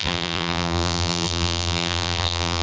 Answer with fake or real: fake